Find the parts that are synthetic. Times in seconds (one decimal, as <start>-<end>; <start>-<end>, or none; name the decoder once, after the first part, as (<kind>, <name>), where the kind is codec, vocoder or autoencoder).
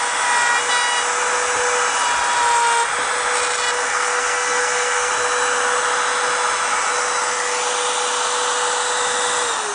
3.9-5.1 (codec, SNAC)